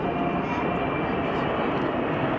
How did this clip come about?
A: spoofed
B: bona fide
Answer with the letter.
B